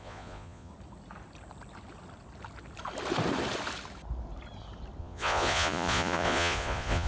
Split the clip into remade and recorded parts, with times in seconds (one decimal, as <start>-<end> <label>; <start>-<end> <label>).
0.0-0.7 remade; 0.7-5.0 recorded; 5.0-7.1 remade